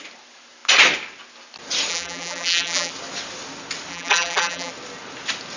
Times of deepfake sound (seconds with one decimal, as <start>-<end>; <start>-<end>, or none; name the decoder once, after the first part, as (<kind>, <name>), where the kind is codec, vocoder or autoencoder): 1.9-2.9 (vocoder, BigVGAN v2); 3.9-4.7